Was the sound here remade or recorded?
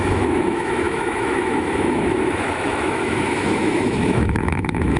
remade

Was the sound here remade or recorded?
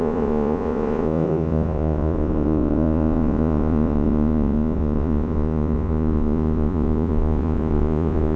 remade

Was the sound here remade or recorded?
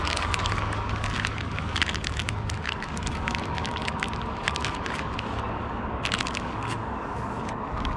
remade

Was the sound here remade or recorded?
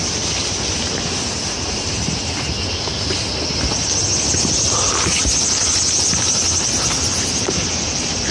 recorded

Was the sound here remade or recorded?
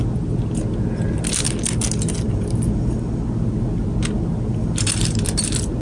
recorded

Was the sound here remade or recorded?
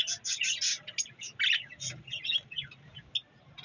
recorded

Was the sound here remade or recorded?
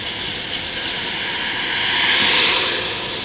recorded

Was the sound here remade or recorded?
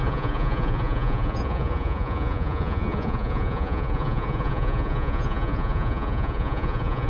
remade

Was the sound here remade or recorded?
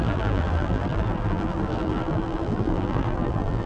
remade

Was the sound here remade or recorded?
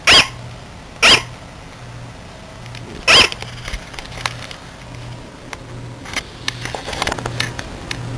recorded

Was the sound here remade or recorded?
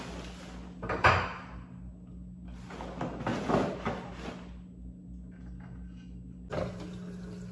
recorded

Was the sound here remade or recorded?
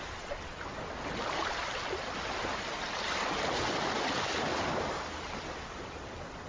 recorded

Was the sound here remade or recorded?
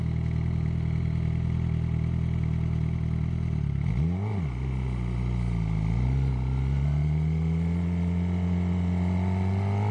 recorded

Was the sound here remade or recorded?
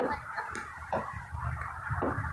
recorded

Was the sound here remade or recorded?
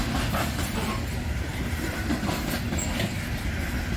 recorded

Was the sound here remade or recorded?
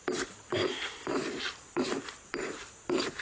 recorded